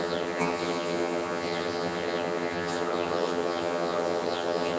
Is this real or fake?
fake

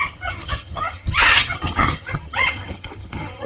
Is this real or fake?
fake